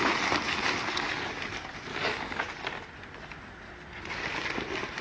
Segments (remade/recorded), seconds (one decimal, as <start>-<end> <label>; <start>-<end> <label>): 0.0-1.9 recorded; 1.9-2.4 remade; 2.4-5.0 recorded